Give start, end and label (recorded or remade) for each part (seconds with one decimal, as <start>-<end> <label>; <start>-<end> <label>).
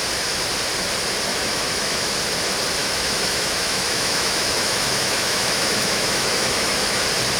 0.0-1.3 recorded; 1.3-2.2 remade; 2.2-2.8 recorded; 2.8-7.0 remade; 7.0-7.4 recorded